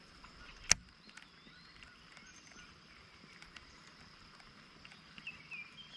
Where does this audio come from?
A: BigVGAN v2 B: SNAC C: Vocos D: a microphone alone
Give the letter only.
A